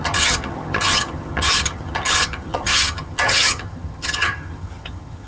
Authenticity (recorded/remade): remade